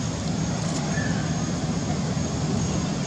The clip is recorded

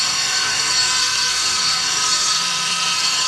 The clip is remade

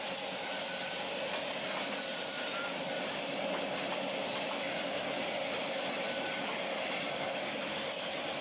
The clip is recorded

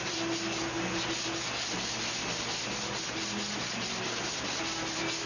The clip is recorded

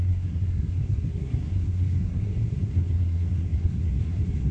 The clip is remade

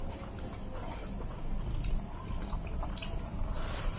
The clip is recorded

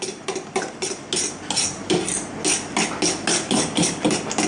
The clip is recorded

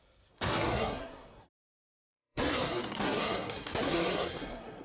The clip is remade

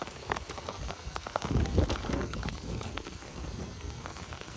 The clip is remade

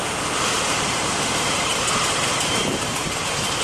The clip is remade